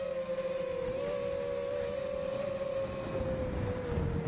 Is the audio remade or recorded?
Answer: recorded